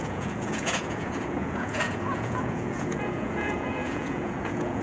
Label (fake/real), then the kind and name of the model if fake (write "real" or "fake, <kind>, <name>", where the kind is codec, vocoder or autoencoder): fake, vocoder, Vocos